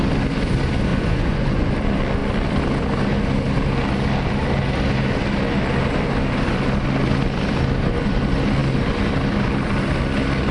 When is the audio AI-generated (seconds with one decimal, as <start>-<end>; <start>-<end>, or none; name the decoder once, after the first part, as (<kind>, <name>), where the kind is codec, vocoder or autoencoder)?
0.9-1.7 (vocoder, Vocos)